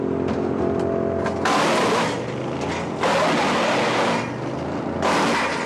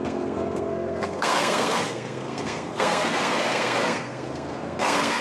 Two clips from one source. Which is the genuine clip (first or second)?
first